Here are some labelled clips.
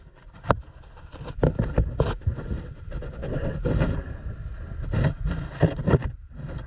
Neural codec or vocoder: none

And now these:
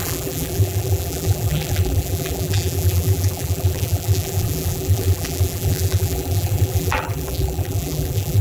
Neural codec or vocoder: vocoder, BigVGAN v2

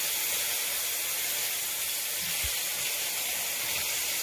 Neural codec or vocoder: none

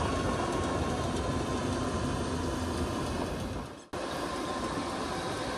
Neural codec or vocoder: none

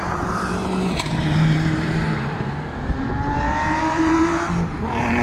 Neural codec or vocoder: vocoder, BigVGAN v2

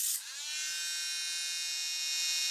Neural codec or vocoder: none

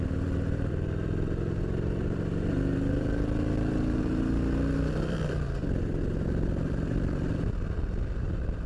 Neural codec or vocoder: vocoder, BigVGAN v2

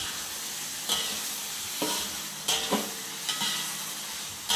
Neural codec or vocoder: none